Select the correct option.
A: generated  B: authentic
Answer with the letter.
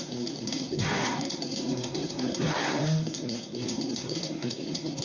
A